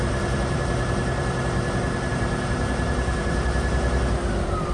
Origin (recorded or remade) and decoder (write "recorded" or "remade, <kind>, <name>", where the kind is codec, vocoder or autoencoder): remade, vocoder, BigVGAN v2